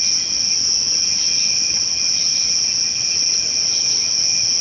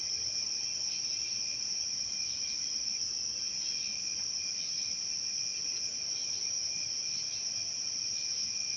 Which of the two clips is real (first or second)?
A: second